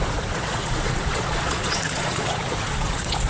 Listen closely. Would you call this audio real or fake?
fake